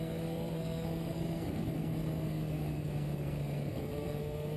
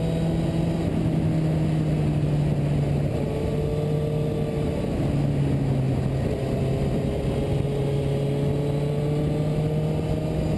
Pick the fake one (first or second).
first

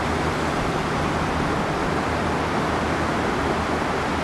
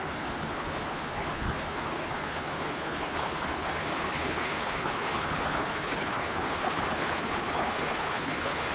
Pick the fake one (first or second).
second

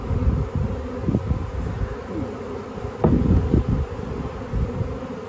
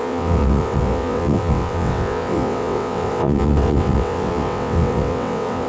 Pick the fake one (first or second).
second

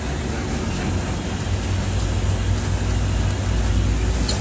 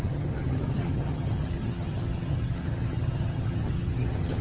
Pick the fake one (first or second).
second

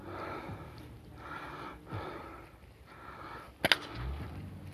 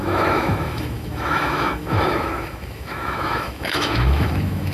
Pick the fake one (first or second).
second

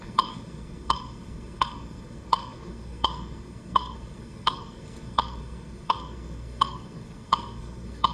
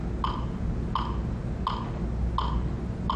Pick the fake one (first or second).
first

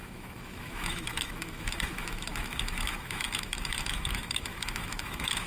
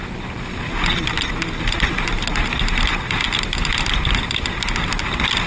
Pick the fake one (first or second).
first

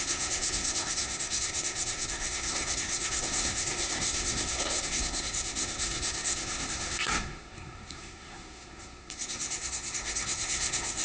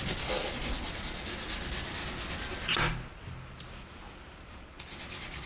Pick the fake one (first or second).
first